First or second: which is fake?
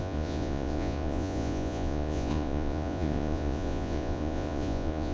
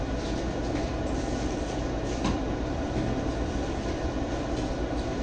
first